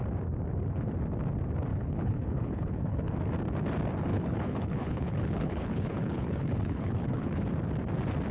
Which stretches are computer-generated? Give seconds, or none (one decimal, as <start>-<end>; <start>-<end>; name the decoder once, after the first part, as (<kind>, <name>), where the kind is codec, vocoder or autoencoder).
1.7-3.1 (codec, HILCodec); 4.1-7.4